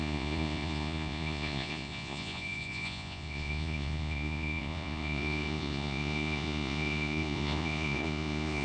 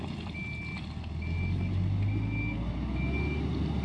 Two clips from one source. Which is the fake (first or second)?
first